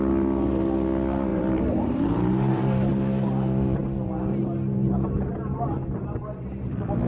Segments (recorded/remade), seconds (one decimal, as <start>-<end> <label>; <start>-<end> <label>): 0.0-1.3 recorded; 1.3-2.9 remade; 2.9-7.1 recorded